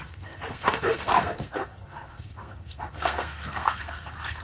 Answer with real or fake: fake